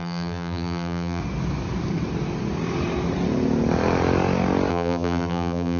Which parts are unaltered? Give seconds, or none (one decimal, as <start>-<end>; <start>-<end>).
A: 1.2-4.7